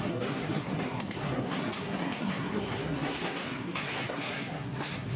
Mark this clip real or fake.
fake